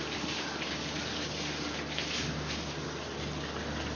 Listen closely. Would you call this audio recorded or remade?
recorded